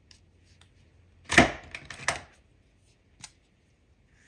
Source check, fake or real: real